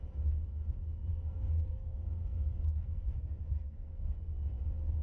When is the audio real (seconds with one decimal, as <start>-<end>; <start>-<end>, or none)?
0.0-1.1; 4.1-5.0